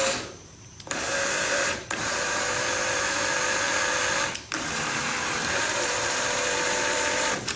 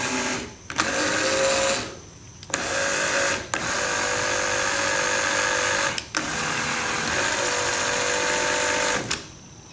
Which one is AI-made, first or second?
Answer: first